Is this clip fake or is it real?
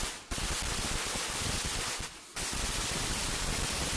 real